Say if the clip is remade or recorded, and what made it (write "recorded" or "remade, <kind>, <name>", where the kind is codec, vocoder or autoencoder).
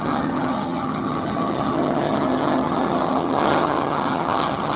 remade, vocoder, HiFi-GAN